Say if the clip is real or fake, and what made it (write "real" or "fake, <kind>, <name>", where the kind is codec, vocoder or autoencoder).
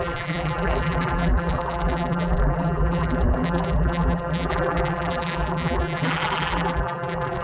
fake, vocoder, BigVGAN v2